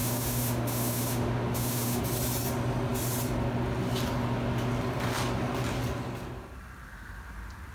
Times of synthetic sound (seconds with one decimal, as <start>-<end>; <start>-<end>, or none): 0.0-2.0